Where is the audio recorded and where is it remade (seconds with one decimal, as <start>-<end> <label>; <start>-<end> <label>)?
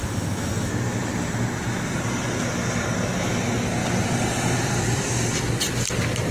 0.0-0.7 remade; 0.7-6.3 recorded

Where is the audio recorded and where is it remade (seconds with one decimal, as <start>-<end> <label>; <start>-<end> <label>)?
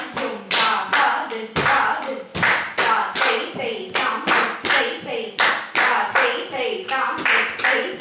0.0-8.0 recorded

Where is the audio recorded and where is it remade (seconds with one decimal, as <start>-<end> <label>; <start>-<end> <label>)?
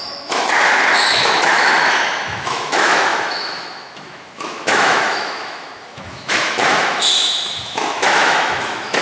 0.0-9.0 remade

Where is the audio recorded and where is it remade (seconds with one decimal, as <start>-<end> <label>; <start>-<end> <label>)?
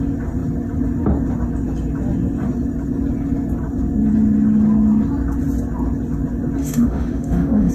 0.0-6.6 recorded; 6.6-7.7 remade